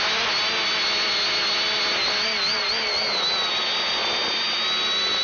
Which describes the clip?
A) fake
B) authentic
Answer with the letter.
B